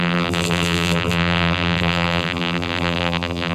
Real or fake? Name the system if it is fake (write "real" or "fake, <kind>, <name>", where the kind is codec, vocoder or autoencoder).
fake, vocoder, BigVGAN v2